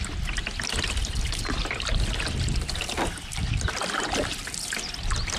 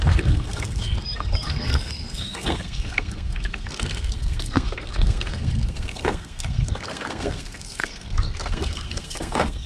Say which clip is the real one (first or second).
first